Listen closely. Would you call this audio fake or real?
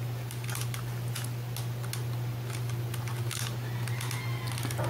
real